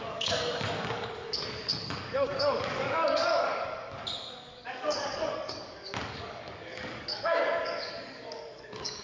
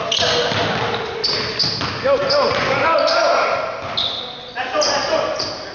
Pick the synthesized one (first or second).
first